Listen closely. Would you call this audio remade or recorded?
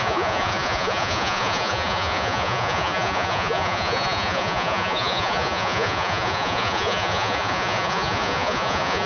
remade